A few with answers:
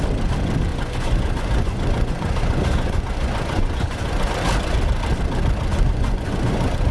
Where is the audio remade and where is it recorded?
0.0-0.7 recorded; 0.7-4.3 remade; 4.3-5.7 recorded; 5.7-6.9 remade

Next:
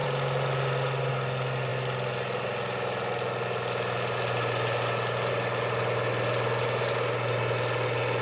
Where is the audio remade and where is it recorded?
0.0-8.2 recorded

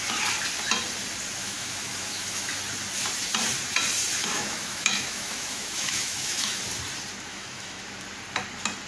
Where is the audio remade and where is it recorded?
0.0-1.4 recorded; 1.4-2.5 remade; 2.5-4.2 recorded; 4.2-6.6 remade; 6.6-7.3 recorded; 7.3-7.8 remade; 7.8-8.9 recorded

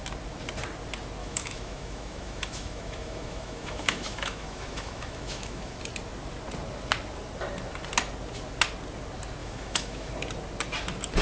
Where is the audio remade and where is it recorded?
0.0-1.2 recorded; 1.2-5.7 remade; 5.7-9.4 recorded; 9.4-10.1 remade; 10.1-11.2 recorded